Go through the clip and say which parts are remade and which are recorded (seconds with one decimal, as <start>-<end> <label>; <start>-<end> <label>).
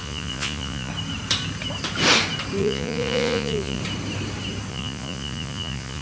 0.0-0.9 remade; 0.9-2.6 recorded; 2.6-3.8 remade; 3.8-4.7 recorded; 4.7-6.0 remade